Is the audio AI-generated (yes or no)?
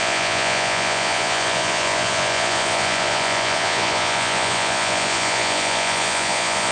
yes